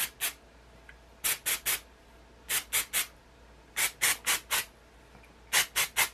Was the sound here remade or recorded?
recorded